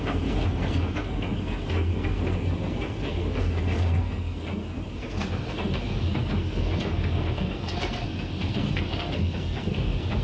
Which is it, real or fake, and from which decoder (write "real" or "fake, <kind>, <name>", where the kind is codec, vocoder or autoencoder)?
fake, codec, SNAC